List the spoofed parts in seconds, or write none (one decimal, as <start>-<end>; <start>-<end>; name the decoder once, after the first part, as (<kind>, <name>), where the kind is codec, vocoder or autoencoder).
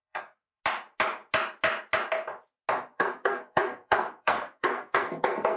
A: 0.0-0.6 (codec, SNAC); 2.9-5.6